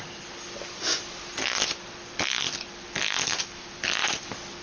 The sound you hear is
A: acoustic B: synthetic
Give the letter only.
A